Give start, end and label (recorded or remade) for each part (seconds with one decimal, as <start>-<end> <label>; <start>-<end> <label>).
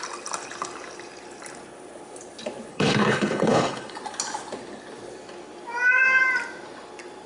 0.0-2.7 recorded; 2.7-4.0 remade; 4.0-7.3 recorded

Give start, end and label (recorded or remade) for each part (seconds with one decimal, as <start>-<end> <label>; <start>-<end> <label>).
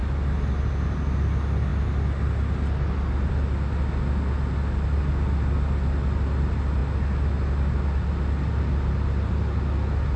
0.0-10.2 recorded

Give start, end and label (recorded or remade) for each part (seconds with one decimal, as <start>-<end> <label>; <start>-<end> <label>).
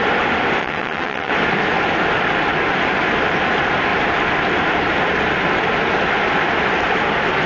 0.0-0.6 recorded; 0.6-1.3 remade; 1.3-7.5 recorded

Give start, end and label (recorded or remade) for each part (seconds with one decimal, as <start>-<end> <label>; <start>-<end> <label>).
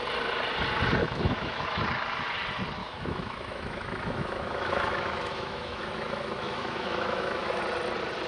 0.0-1.0 recorded; 1.0-1.8 remade; 1.8-2.8 recorded; 2.8-7.6 remade; 7.6-8.3 recorded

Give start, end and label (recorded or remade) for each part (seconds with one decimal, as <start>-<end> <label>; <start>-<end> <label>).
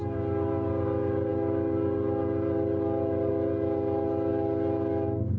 0.0-5.4 recorded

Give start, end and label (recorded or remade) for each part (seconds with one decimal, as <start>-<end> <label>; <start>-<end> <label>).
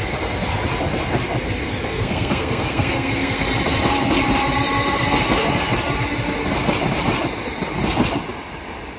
0.0-1.7 recorded; 1.7-3.4 remade; 3.4-9.0 recorded